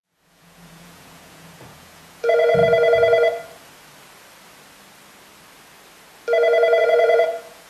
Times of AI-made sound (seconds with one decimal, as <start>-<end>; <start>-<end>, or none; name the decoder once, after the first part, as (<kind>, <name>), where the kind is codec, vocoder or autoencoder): 0.0-2.6 (vocoder, Vocos); 6.8-7.7